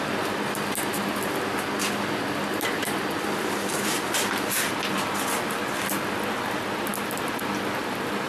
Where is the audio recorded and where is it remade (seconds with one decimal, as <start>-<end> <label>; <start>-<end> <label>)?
0.0-8.3 recorded